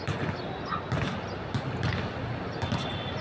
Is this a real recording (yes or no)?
yes